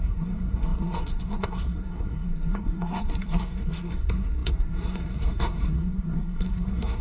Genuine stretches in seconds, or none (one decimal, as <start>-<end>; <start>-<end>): none